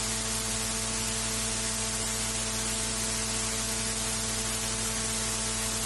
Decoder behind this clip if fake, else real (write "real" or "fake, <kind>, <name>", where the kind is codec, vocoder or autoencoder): real